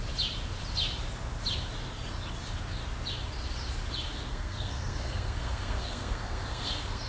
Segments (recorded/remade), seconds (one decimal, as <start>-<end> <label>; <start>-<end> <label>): 0.0-4.3 recorded; 4.3-7.1 remade